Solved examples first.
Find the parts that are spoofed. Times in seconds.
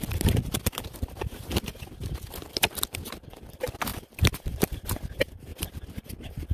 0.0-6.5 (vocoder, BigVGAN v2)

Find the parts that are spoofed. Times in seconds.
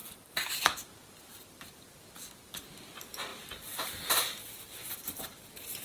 0.0-1.9 (vocoder, BigVGAN v2); 3.3-3.9; 4.4-5.2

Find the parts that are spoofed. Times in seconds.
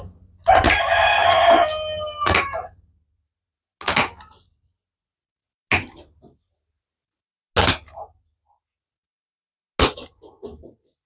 none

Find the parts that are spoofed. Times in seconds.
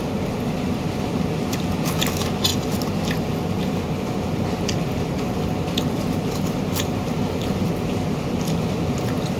2.5-7.7 (vocoder, BigVGAN v2)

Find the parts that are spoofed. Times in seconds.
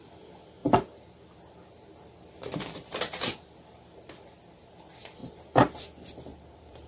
5.2-5.8 (vocoder, BigVGAN v2); 6.3-6.9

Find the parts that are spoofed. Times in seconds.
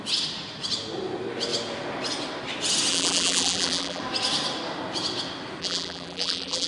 2.9-4.0 (vocoder, BigVGAN v2); 5.6-6.7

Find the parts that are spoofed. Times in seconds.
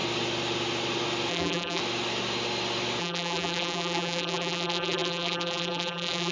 1.3-1.8 (vocoder, BigVGAN v2); 3.0-6.3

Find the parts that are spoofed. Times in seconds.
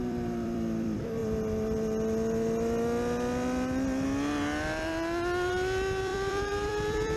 0.0-1.2 (vocoder, BigVGAN v2); 5.5-7.2